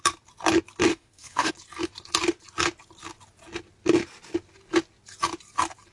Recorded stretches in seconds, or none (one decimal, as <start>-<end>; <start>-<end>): 0.0-0.9; 1.5-5.9